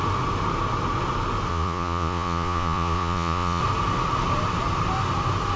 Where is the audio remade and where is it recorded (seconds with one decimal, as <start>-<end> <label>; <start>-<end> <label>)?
0.0-1.5 recorded; 1.5-3.6 remade; 3.6-5.6 recorded